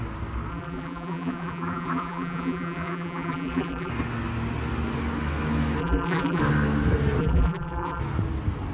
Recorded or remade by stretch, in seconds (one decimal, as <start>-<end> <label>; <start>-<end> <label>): 0.0-0.5 recorded; 0.5-3.9 remade; 3.9-5.8 recorded; 5.8-6.4 remade; 6.4-7.2 recorded; 7.2-8.0 remade; 8.0-8.7 recorded